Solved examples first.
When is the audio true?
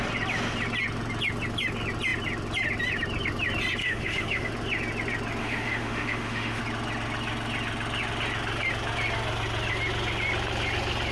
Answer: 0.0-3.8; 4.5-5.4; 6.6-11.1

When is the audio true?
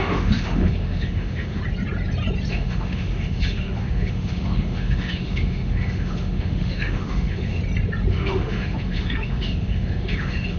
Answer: 1.6-2.5; 7.6-8.1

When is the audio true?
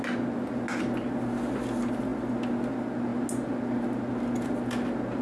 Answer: 0.0-5.2